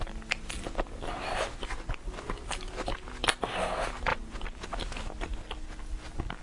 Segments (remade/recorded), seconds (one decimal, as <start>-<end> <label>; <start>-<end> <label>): 0.0-6.4 recorded